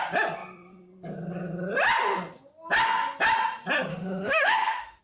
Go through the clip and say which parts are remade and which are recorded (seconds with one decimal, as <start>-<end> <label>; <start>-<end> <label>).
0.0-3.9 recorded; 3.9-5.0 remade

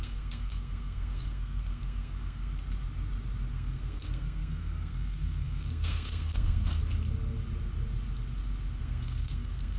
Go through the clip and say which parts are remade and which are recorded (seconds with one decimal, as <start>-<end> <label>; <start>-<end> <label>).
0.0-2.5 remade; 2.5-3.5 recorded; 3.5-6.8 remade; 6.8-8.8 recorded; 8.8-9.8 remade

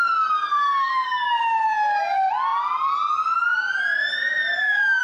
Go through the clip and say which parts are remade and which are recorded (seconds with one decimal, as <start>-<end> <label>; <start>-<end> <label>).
0.0-0.5 recorded; 0.5-1.4 remade; 1.4-4.5 recorded; 4.5-5.0 remade